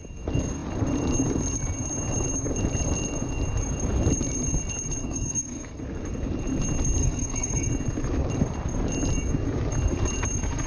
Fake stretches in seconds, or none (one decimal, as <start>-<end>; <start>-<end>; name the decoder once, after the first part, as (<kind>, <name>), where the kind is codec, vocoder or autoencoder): 5.0-5.8 (codec, DAC); 7.0-7.7